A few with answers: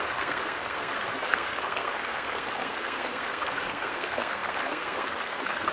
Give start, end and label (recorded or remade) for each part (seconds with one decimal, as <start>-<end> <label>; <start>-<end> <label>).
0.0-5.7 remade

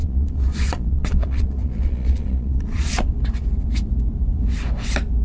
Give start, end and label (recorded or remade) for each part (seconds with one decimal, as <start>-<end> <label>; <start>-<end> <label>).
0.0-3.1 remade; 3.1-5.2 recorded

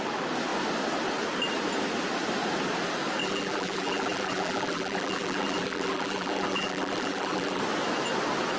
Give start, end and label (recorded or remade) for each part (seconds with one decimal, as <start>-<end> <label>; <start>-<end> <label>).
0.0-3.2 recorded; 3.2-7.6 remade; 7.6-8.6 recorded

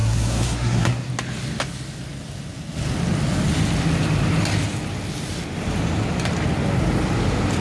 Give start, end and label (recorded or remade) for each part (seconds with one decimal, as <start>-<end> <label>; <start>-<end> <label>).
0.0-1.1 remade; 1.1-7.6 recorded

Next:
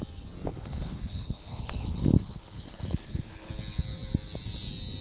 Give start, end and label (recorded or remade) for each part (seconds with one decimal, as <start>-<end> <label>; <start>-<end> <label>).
0.0-0.5 recorded; 0.5-3.5 remade; 3.5-5.0 recorded

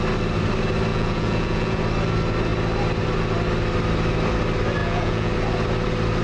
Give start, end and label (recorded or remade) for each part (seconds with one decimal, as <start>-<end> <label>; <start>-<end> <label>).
0.0-0.9 recorded; 0.9-1.8 remade; 1.8-4.8 recorded; 4.8-5.3 remade; 5.3-6.2 recorded